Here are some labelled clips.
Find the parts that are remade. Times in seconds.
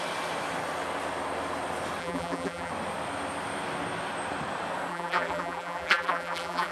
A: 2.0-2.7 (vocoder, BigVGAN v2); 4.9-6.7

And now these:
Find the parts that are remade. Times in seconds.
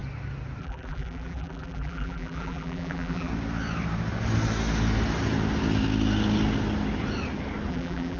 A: 0.6-3.3 (vocoder, BigVGAN v2); 7.7-8.2